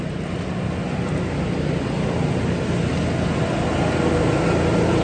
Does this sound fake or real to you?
real